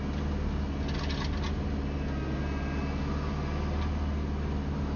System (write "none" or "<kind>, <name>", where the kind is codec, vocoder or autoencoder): none